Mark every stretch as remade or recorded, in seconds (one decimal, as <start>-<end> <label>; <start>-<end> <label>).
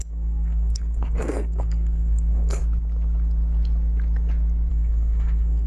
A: 0.0-2.6 remade; 2.6-4.7 recorded; 4.7-5.7 remade